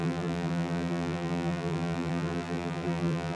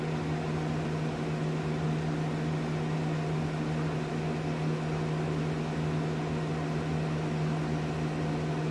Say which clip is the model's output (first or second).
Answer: first